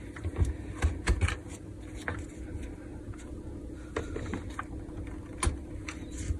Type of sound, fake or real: real